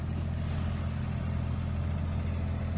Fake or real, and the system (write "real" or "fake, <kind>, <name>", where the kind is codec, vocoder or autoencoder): real